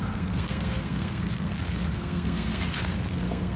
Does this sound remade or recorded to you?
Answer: remade